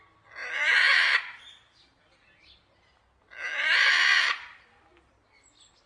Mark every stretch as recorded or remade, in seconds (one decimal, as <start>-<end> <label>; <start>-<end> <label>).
0.0-5.9 recorded